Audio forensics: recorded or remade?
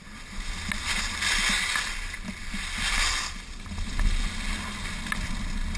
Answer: recorded